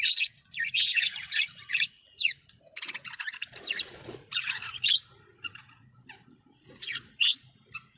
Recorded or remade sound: remade